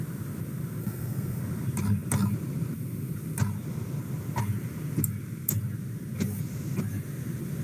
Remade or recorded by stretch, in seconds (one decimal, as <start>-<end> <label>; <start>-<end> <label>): 0.0-0.8 recorded; 0.8-1.4 remade; 1.4-7.6 recorded